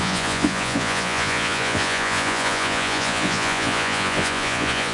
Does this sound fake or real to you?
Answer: fake